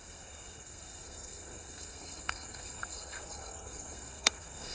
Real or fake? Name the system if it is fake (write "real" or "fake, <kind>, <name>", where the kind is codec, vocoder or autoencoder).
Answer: fake, codec, SNAC